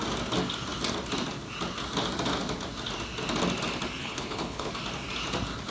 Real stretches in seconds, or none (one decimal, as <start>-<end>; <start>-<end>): 0.0-4.0; 4.7-5.7